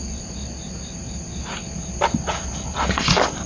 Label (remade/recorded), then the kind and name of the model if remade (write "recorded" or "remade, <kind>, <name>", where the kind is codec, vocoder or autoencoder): recorded